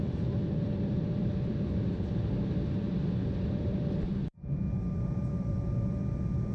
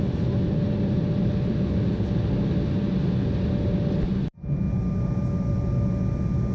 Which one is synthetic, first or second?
first